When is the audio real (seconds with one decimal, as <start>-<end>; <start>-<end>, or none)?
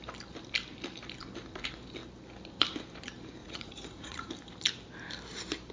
0.0-3.4; 4.3-5.7